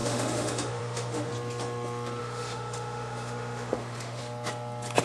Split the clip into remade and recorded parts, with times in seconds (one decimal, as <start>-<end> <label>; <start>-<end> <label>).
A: 0.0-1.3 remade; 1.3-2.2 recorded; 2.2-4.2 remade; 4.2-5.0 recorded